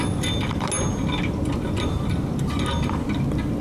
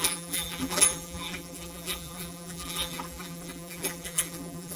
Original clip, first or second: first